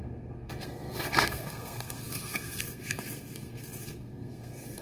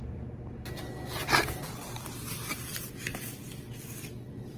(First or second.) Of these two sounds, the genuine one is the second